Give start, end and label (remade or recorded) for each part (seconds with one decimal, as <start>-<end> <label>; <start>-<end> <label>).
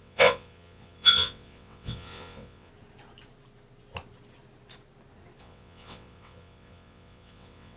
0.0-2.7 remade; 2.7-5.4 recorded; 5.4-7.8 remade